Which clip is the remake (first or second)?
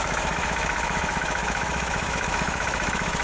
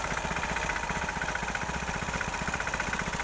first